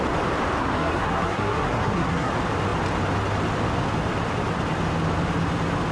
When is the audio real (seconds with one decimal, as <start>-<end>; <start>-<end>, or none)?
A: 0.0-0.6; 2.3-5.9